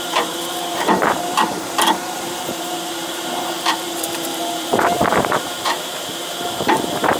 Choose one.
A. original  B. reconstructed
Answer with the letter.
B